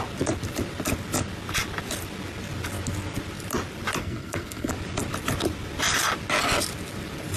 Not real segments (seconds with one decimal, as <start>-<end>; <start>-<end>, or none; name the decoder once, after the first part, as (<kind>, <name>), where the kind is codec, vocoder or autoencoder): 4.0-4.7 (codec, SNAC)